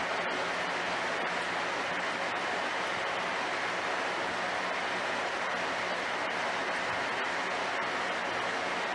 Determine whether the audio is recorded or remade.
recorded